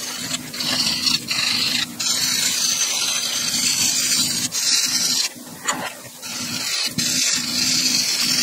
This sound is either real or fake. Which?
real